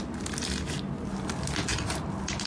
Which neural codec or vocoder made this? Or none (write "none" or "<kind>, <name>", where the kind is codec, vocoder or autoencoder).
none